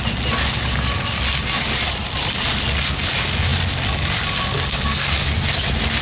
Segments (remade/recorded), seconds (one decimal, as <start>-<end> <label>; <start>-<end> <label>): 0.0-6.0 recorded